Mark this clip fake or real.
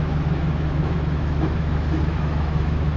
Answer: fake